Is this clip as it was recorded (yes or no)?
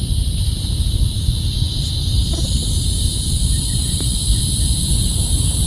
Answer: no